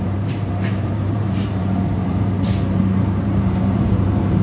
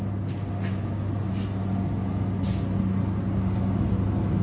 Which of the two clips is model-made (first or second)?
first